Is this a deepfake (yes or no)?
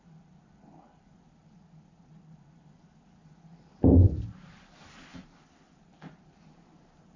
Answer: yes